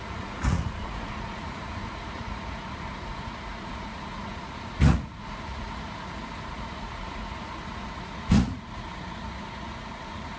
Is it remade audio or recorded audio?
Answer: remade